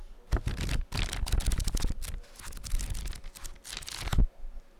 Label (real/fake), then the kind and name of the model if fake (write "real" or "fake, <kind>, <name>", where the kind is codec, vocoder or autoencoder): real